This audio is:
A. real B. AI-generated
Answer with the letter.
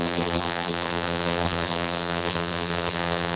B